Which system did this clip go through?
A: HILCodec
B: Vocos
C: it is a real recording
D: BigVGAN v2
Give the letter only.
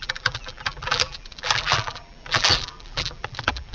D